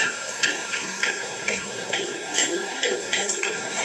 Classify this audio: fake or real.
fake